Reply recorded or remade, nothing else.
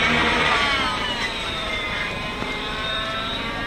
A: remade